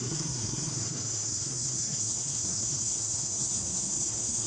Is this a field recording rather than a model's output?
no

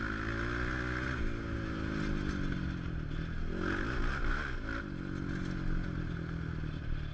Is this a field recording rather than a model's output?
yes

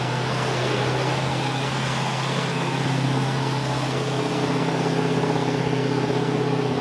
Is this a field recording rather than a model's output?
no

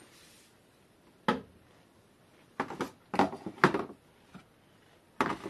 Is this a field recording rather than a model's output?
yes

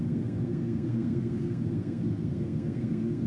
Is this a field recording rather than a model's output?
no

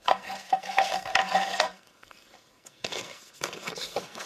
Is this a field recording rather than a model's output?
no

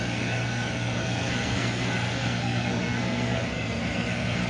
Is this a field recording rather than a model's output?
no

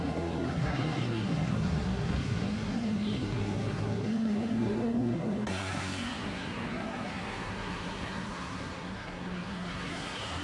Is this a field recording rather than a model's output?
no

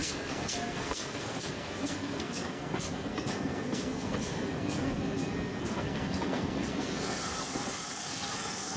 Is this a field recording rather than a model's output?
no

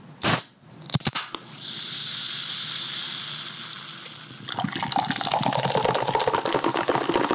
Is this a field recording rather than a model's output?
yes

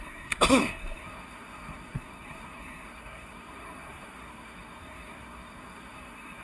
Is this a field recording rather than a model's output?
no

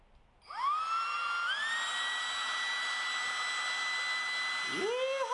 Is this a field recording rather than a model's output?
yes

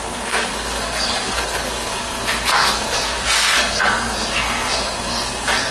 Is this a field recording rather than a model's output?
no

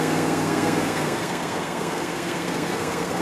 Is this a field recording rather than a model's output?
no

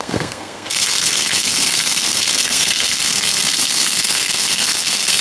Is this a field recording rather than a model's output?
no